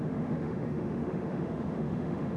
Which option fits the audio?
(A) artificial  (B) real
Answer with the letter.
A